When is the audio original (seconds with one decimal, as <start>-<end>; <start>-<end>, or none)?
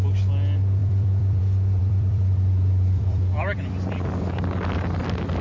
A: 0.0-0.8; 1.4-1.8; 4.3-5.4